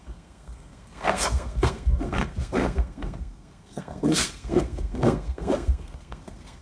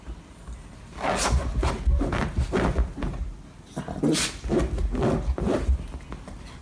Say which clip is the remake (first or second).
first